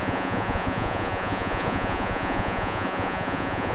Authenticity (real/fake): fake